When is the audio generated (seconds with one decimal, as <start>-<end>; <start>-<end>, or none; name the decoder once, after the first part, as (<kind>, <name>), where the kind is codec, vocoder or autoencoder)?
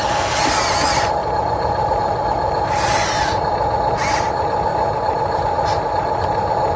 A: 1.2-2.9 (vocoder, BigVGAN v2); 4.7-5.4